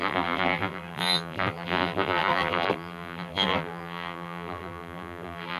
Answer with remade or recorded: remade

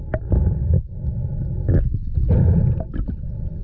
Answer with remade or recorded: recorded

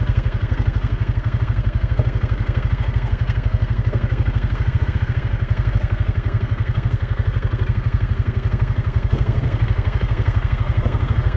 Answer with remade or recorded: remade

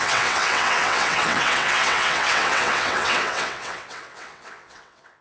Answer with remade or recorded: remade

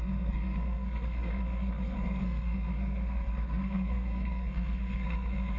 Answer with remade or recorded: remade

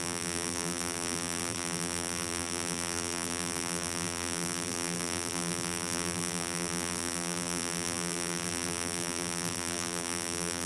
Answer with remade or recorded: remade